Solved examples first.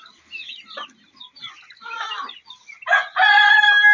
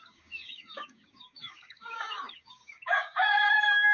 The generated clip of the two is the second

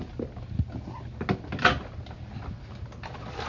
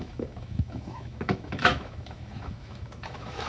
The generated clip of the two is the second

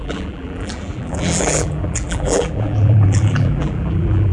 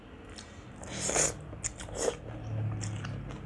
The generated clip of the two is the first